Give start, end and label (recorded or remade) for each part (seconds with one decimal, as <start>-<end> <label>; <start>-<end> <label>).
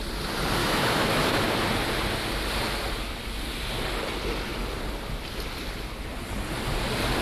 0.0-0.6 recorded; 0.6-1.4 remade; 1.4-7.2 recorded